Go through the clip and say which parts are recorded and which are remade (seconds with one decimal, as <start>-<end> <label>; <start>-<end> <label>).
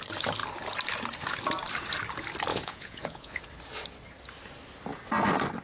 0.0-2.5 recorded; 2.5-3.4 remade; 3.4-5.6 recorded